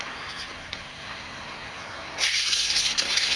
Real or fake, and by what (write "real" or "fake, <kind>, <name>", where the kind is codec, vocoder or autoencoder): fake, codec, SNAC